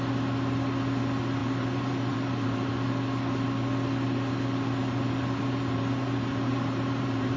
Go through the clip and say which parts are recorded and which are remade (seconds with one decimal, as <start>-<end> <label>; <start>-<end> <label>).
0.0-1.4 recorded; 1.4-2.7 remade; 2.7-4.8 recorded; 4.8-7.4 remade